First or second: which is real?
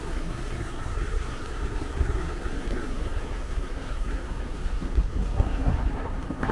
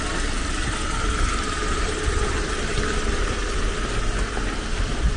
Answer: second